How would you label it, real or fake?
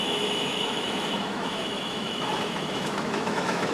fake